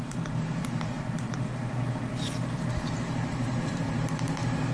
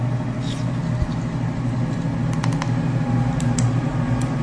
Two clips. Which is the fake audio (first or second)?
first